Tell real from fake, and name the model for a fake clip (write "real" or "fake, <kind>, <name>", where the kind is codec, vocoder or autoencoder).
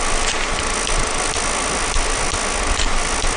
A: real